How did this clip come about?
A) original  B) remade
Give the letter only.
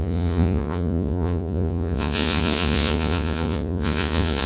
B